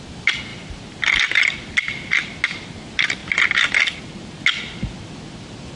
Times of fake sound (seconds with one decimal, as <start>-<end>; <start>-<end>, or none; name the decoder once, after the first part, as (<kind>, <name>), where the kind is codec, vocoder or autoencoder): none